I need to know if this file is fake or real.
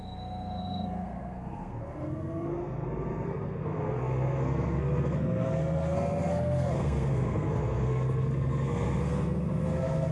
fake